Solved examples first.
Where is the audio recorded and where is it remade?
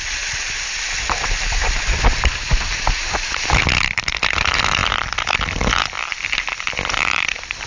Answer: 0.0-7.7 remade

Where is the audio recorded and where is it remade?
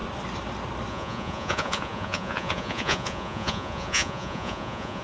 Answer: 0.0-0.9 recorded; 0.9-5.0 remade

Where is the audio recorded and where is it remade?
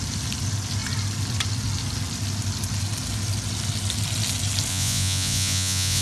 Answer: 0.0-4.7 recorded; 4.7-6.0 remade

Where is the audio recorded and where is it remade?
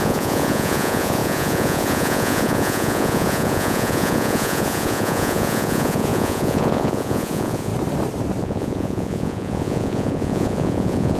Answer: 0.0-7.7 remade; 7.7-8.4 recorded; 8.4-11.2 remade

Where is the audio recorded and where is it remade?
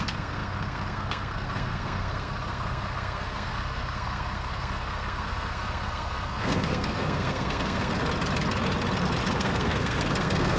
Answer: 0.0-8.0 remade; 8.0-9.3 recorded; 9.3-10.6 remade